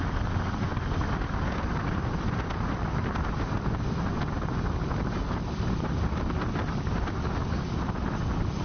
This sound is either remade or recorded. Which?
recorded